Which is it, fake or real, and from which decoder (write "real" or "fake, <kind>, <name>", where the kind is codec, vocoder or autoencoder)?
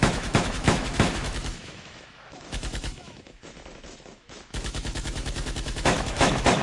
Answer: fake, autoencoder, DAC-VAE